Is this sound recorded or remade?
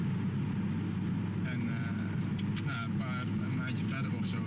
recorded